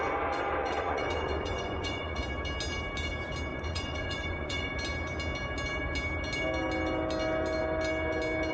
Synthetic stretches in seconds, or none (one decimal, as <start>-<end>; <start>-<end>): 0.6-2.2; 3.5-4.7